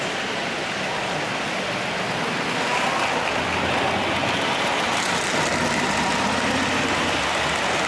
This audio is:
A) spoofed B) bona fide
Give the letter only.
B